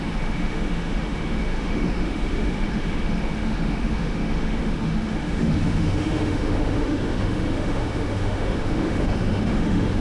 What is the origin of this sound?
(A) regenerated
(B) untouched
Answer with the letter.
A